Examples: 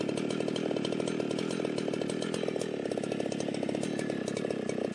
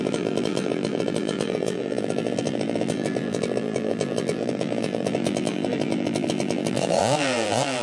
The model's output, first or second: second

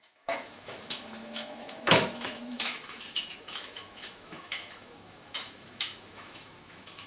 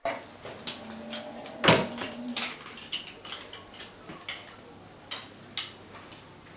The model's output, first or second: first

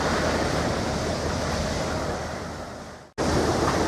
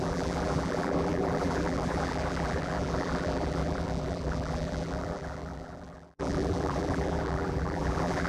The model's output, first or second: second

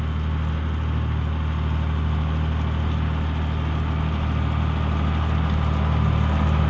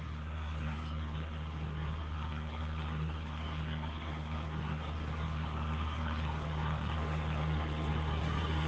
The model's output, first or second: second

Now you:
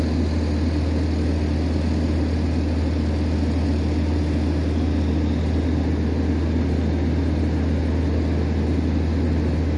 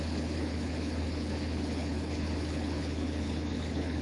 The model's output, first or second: second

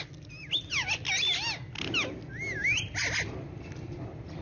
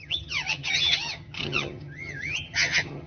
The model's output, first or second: second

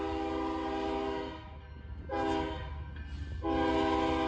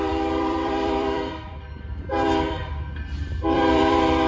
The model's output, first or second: second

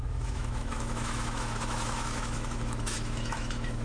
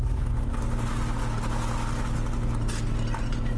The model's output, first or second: first